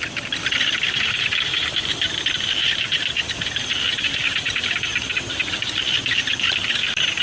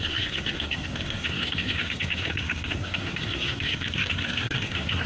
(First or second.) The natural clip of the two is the first